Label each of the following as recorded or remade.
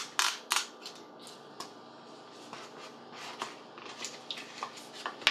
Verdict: recorded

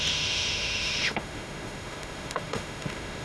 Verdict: remade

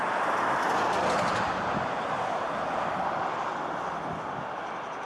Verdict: recorded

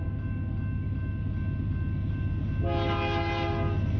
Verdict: recorded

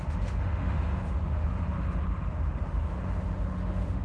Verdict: remade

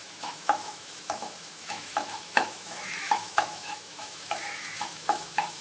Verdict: remade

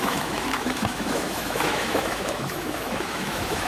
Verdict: remade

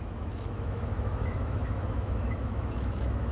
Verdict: remade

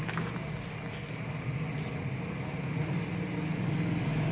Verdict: recorded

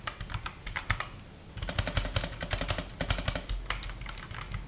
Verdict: recorded